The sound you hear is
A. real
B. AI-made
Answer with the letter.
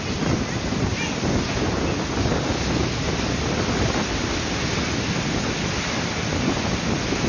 A